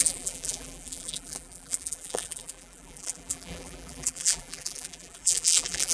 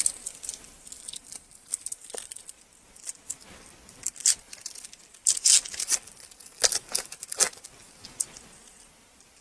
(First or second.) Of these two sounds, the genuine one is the second